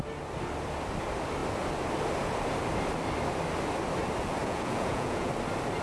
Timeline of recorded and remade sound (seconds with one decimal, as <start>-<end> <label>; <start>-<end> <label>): 0.0-4.4 recorded; 4.4-5.3 remade; 5.3-5.8 recorded